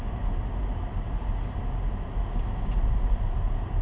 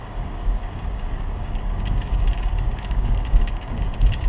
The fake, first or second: second